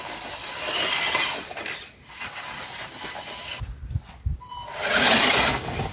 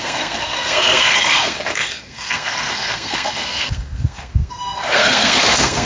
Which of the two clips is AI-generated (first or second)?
second